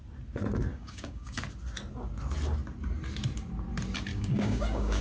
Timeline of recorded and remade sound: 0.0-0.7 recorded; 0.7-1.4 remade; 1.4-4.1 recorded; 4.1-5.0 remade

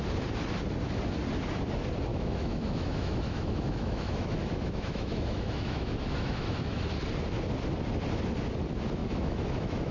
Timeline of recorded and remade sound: 0.0-2.1 recorded; 2.1-6.8 remade; 6.8-9.0 recorded; 9.0-9.9 remade

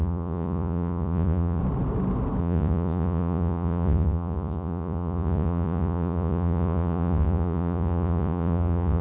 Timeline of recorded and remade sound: 0.0-1.6 remade; 1.6-2.4 recorded; 2.4-9.0 remade

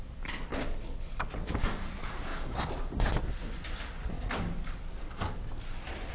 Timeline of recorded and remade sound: 0.0-0.5 recorded; 0.5-1.3 remade; 1.3-6.1 recorded